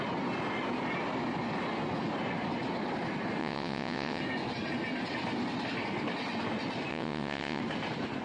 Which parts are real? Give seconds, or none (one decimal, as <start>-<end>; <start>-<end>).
0.0-3.4; 4.2-6.9; 7.6-8.2